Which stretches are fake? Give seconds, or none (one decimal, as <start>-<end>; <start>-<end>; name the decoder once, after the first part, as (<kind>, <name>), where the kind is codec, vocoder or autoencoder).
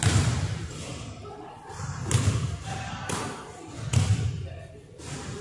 0.0-3.7 (vocoder, BigVGAN v2); 4.6-5.4